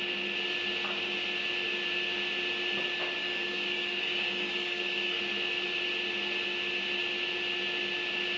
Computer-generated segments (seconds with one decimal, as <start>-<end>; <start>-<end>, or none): 3.2-5.2